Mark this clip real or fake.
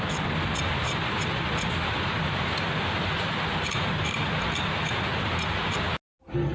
real